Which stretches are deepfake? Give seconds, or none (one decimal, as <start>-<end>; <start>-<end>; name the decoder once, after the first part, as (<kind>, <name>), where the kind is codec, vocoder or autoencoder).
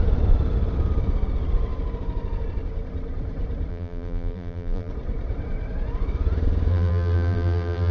3.7-4.9 (vocoder, BigVGAN v2); 6.7-7.9